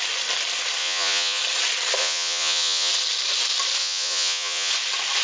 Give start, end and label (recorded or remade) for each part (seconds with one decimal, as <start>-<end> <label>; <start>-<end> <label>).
0.0-0.8 recorded; 0.8-1.4 remade; 1.4-2.0 recorded; 2.0-2.9 remade; 2.9-3.8 recorded; 3.8-4.7 remade; 4.7-5.2 recorded